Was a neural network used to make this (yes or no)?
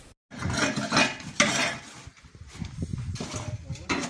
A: no